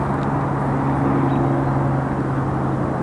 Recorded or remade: recorded